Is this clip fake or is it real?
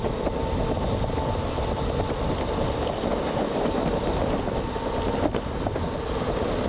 real